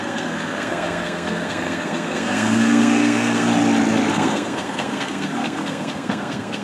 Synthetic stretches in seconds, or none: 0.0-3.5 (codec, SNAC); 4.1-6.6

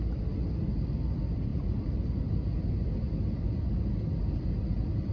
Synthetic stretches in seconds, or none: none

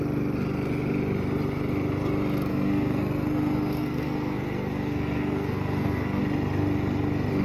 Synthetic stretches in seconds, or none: 2.5-6.2 (codec, SNAC)

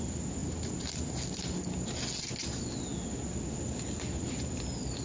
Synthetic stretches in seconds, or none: none

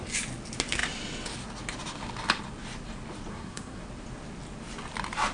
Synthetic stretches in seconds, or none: 3.3-3.8 (codec, SNAC)